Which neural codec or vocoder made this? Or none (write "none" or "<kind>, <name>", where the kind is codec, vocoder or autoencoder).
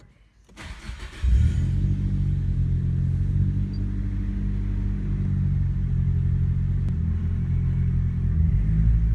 none